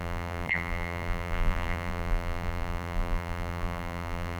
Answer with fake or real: fake